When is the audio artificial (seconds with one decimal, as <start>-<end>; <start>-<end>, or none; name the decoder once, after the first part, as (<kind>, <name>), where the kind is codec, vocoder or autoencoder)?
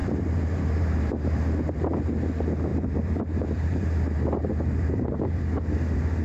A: 0.0-2.0 (vocoder, BigVGAN v2); 2.7-5.4